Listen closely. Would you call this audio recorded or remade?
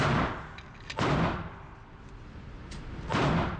recorded